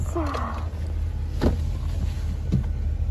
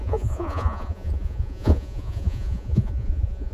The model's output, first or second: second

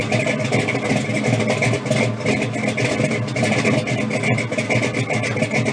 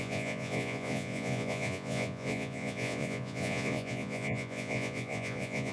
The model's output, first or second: second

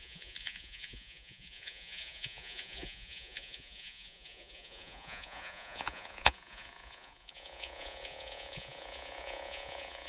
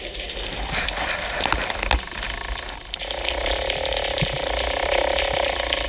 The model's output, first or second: first